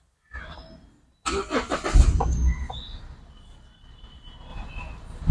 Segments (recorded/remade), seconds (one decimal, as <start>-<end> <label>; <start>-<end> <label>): 0.0-5.3 recorded